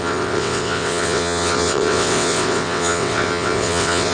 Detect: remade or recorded remade